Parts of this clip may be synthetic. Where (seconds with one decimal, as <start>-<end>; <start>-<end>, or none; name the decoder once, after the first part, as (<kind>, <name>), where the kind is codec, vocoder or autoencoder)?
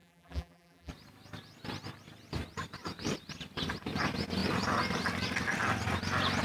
0.0-0.9 (vocoder, BigVGAN v2)